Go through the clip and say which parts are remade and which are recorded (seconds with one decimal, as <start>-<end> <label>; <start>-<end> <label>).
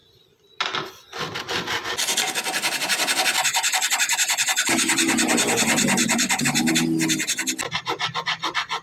0.0-6.0 recorded; 6.0-6.7 remade; 6.7-8.8 recorded